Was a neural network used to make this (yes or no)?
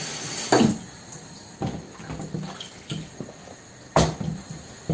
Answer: no